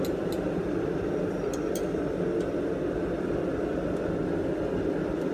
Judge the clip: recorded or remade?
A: recorded